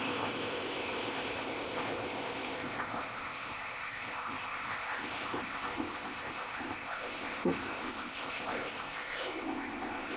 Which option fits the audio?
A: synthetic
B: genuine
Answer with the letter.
A